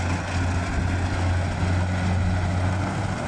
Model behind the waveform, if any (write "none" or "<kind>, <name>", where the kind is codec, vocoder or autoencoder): none